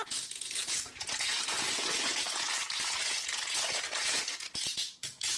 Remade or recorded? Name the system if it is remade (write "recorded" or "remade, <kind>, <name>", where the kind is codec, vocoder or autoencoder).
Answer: remade, vocoder, Vocos